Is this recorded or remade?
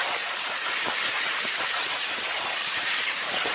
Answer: remade